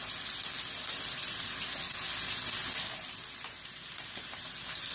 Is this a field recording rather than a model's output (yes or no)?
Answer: yes